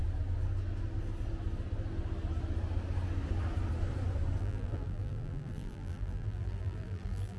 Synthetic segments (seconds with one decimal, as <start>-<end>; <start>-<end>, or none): 4.4-7.4